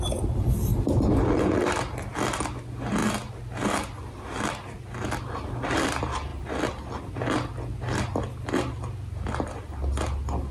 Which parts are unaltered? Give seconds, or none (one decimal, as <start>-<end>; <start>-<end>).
0.0-10.5